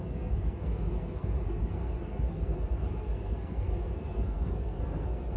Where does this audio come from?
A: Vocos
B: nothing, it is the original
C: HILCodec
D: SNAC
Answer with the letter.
D